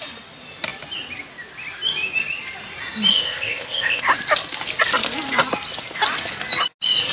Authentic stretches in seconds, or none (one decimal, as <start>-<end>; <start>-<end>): 0.0-3.1; 4.0-7.1